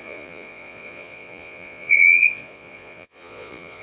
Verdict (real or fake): fake